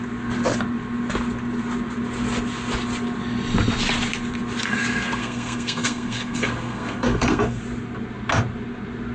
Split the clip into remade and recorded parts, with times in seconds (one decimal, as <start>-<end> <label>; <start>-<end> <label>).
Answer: 0.0-5.2 recorded; 5.2-7.6 remade; 7.6-9.1 recorded

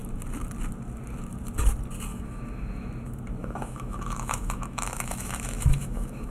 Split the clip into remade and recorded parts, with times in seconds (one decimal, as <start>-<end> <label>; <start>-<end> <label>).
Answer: 0.0-2.1 recorded; 2.1-2.9 remade; 2.9-3.4 recorded; 3.4-6.3 remade

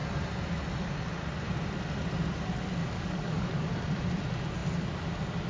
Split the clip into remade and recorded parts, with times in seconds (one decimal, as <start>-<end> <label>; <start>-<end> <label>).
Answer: 0.0-2.8 recorded; 2.8-3.7 remade; 3.7-5.5 recorded

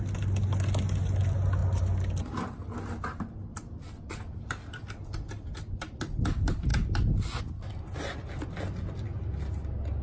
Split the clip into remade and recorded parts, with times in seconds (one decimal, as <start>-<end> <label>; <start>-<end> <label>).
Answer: 0.0-10.0 recorded